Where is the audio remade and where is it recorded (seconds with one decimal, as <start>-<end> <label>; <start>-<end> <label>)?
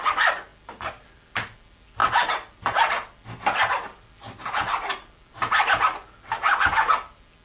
0.0-7.4 recorded